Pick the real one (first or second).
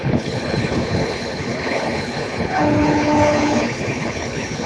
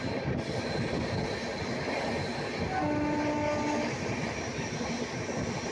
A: second